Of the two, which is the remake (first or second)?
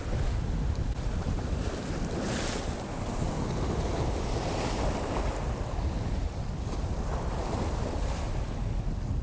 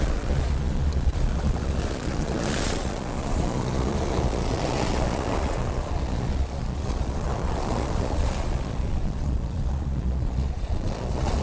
second